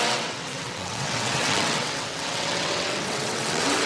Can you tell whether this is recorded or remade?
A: remade